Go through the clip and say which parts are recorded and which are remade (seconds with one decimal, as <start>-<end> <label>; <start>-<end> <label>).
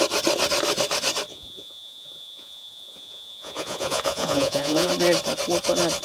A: 0.0-1.3 recorded; 1.3-4.9 remade; 4.9-6.0 recorded